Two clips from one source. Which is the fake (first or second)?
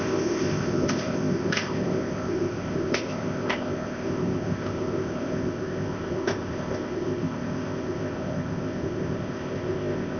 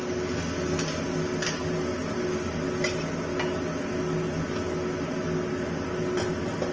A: first